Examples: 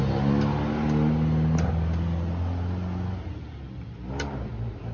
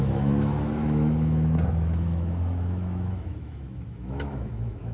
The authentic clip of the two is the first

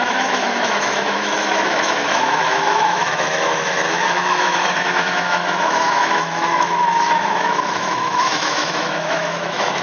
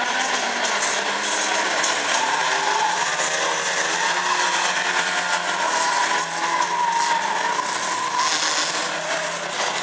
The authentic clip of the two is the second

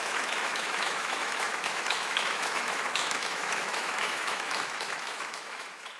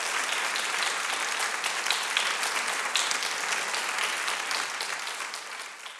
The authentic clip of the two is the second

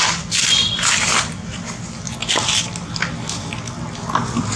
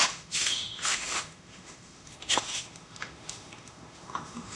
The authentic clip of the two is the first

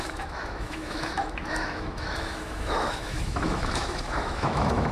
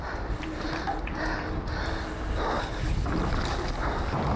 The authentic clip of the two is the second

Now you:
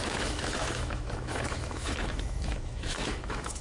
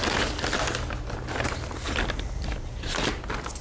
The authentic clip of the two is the second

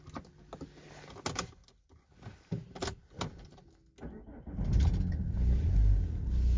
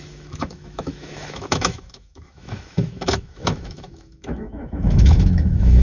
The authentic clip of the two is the first